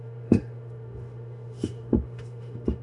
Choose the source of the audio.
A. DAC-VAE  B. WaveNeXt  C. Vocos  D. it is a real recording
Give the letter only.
A